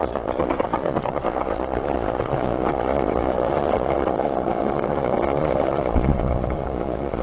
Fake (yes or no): yes